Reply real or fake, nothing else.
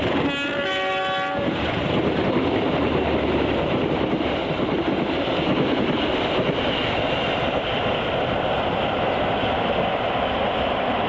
real